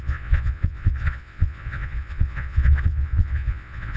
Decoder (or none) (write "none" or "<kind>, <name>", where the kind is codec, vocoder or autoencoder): vocoder, Vocos